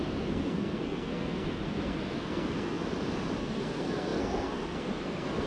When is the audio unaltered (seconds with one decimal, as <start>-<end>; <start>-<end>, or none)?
2.8-3.4